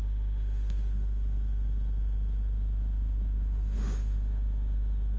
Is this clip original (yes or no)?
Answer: no